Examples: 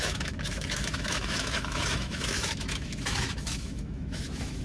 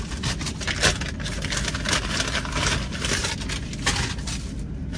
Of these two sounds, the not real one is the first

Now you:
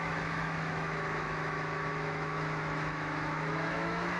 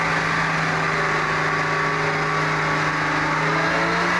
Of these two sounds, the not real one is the first